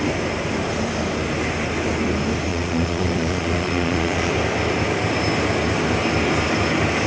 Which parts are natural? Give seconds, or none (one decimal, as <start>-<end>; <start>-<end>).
0.0-2.5; 4.3-7.1